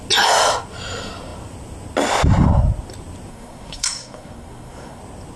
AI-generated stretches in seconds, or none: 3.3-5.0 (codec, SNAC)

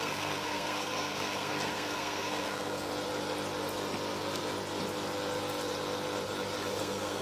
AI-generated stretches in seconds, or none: 0.0-2.9 (codec, SNAC); 6.8-7.2

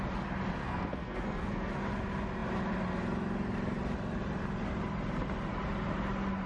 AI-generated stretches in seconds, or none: 0.6-1.7 (codec, SNAC)